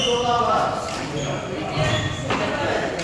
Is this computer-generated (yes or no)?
no